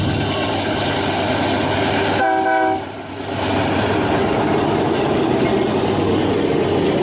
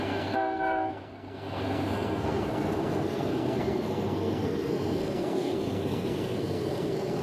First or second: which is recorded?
first